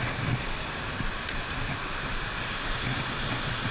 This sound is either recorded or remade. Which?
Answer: recorded